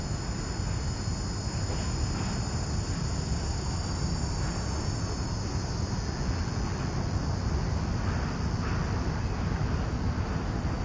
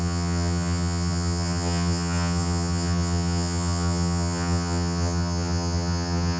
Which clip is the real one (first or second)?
first